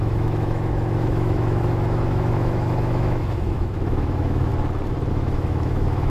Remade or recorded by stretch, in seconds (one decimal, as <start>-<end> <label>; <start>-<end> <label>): 0.0-4.5 remade; 4.5-5.1 recorded; 5.1-6.1 remade

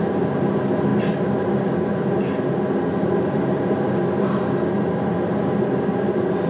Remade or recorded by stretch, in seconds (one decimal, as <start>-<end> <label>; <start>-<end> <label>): 0.0-6.5 recorded

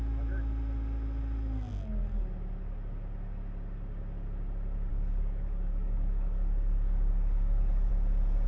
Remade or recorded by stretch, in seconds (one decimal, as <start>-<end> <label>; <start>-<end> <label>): 0.0-4.9 recorded; 4.9-7.9 remade; 7.9-8.5 recorded